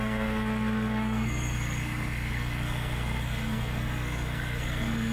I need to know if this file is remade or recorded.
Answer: remade